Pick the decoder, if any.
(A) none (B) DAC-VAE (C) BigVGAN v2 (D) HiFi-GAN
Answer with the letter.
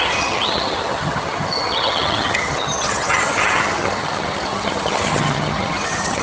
D